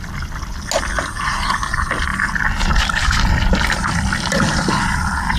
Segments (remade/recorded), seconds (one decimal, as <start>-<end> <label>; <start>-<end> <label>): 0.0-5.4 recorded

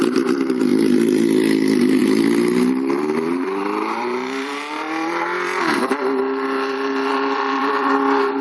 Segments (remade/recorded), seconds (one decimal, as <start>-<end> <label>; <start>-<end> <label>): 0.0-8.4 remade

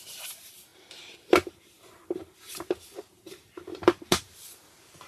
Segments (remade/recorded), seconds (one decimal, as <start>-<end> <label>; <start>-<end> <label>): 0.0-5.1 remade

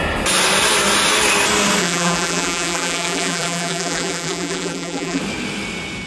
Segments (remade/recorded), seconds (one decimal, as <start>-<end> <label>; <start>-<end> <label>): 0.0-1.8 recorded; 1.8-5.2 remade; 5.2-6.1 recorded

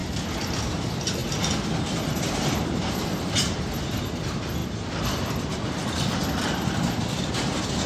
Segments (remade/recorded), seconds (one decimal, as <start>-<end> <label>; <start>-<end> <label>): 0.0-0.6 recorded; 0.6-1.2 remade; 1.2-2.3 recorded; 2.3-4.6 remade; 4.6-6.4 recorded; 6.4-7.9 remade

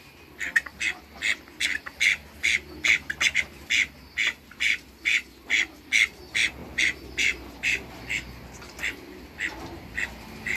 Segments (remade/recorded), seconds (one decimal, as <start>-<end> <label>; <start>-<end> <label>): 0.0-6.6 recorded; 6.6-8.0 remade; 8.0-10.6 recorded

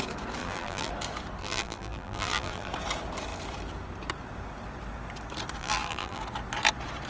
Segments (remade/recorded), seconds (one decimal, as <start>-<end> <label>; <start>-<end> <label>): 0.0-0.4 recorded; 0.4-0.9 remade; 0.9-1.4 recorded; 1.4-2.7 remade; 2.7-5.6 recorded; 5.6-6.2 remade; 6.2-7.1 recorded